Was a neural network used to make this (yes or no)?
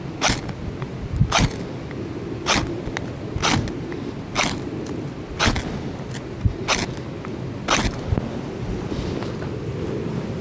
no